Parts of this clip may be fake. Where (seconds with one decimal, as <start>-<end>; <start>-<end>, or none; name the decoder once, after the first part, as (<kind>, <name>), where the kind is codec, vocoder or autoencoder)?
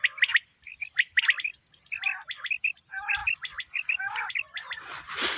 0.7-1.2 (vocoder, BigVGAN v2); 3.2-4.2